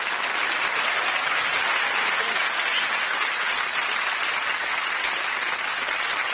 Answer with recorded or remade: recorded